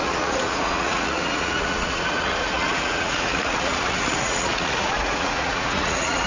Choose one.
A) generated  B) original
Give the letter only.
A